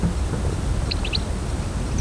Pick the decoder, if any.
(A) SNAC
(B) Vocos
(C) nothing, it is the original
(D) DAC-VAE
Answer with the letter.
C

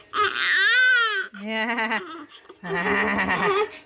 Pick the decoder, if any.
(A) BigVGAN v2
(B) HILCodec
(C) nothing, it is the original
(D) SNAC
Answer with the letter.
C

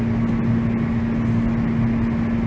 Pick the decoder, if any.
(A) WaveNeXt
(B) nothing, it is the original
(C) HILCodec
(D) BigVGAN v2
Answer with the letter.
B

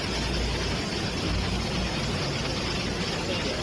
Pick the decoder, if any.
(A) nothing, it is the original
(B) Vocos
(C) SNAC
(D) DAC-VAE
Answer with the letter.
A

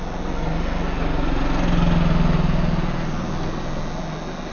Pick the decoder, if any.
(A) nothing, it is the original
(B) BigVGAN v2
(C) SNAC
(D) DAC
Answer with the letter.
A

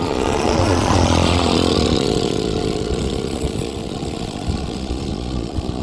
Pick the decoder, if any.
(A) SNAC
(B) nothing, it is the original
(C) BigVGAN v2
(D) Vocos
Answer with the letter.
D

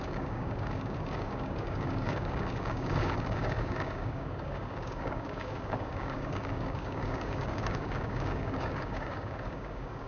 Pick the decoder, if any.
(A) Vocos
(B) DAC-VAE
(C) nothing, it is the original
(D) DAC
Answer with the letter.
D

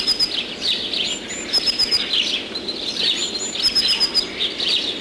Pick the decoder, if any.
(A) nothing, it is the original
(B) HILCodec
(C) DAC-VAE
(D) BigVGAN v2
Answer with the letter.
A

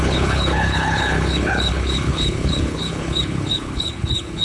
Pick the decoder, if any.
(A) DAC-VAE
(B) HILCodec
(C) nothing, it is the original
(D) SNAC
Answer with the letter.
B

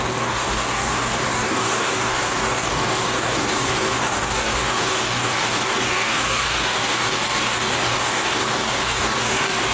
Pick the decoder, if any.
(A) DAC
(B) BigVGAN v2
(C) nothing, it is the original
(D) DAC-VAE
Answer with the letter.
A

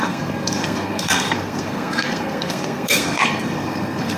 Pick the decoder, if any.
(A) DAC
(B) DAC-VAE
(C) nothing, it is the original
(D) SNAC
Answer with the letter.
D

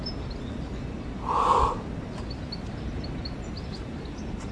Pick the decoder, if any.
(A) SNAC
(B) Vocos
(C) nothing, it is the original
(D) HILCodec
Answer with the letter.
C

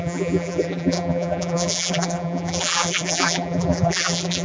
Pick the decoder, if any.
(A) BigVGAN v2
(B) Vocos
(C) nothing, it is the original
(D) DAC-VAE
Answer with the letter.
A